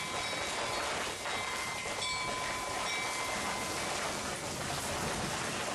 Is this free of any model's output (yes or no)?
yes